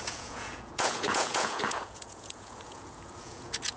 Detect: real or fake fake